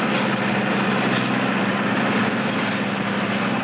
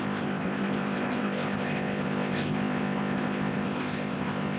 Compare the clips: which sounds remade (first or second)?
second